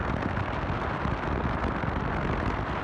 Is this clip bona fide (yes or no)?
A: yes